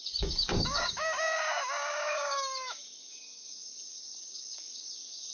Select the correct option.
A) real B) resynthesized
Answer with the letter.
B